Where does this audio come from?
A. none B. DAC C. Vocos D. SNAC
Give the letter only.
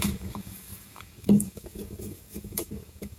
B